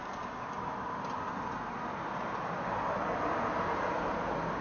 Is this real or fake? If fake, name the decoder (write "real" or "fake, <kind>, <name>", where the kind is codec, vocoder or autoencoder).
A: real